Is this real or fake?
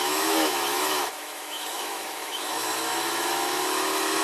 fake